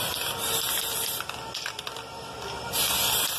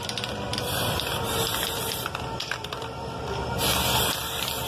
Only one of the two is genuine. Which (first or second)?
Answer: first